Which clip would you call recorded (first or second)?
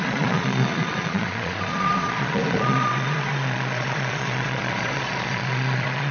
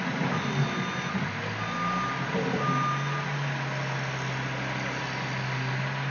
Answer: second